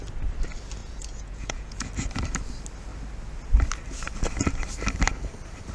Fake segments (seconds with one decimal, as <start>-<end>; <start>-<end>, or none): 0.8-1.9